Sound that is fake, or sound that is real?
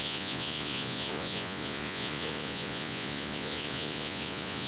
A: fake